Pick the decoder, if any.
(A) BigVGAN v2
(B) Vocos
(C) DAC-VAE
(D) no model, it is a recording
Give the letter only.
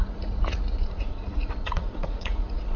B